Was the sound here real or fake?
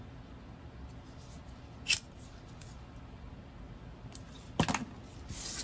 real